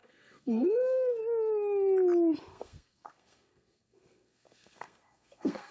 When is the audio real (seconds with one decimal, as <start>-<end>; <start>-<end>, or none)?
1.2-2.5